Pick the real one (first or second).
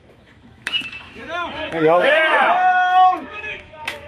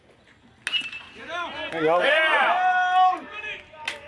second